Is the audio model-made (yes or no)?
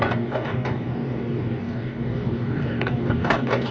yes